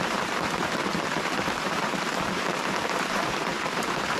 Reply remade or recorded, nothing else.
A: remade